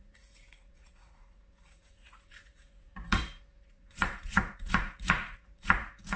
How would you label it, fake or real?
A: fake